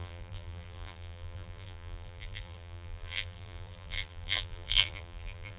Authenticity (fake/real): fake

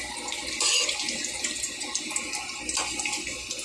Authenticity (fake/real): real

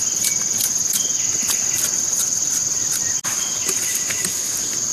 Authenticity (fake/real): real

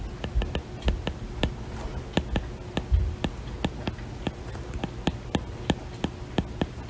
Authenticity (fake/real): real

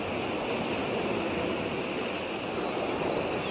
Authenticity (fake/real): real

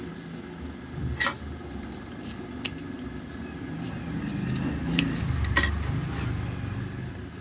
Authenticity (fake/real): real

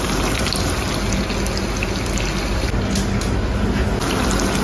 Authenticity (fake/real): real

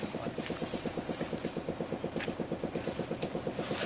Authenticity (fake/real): real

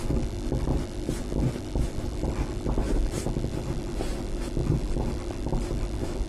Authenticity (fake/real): real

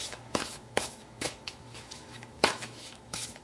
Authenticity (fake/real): fake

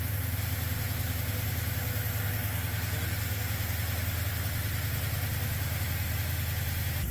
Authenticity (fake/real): real